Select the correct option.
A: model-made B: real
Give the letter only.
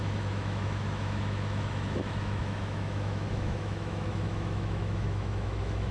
A